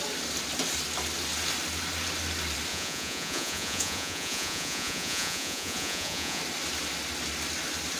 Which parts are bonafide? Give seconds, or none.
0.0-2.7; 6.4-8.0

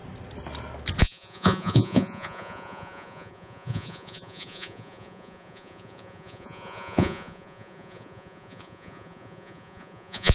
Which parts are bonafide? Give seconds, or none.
0.0-1.0

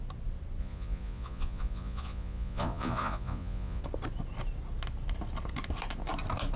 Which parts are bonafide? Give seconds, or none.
0.0-0.6; 3.8-6.6

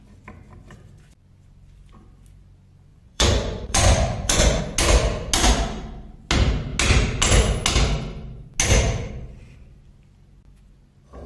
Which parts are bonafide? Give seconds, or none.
0.0-2.9; 4.6-11.3

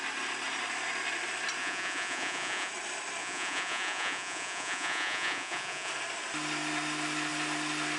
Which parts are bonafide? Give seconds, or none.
0.0-1.6; 2.7-3.2; 5.9-8.0

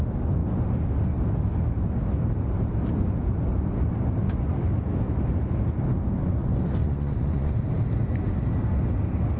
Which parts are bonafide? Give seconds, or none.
0.0-6.8; 7.5-9.4